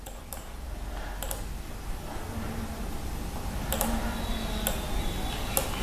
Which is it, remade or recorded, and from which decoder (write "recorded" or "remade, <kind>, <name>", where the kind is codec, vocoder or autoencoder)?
recorded